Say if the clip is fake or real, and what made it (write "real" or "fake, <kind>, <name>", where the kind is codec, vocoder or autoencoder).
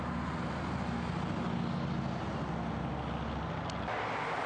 real